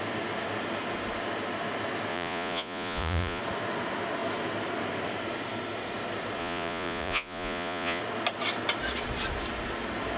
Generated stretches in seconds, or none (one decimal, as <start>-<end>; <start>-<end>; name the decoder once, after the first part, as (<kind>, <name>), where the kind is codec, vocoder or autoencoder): 2.1-3.4 (vocoder, Vocos); 6.4-8.0